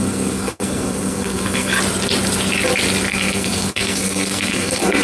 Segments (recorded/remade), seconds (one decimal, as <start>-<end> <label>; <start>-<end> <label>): 0.0-1.7 remade; 1.7-3.1 recorded; 3.1-5.0 remade